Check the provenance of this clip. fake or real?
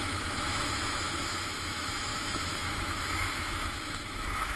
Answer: fake